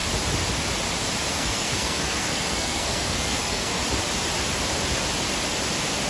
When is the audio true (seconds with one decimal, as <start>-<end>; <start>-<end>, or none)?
0.0-1.3; 3.8-6.1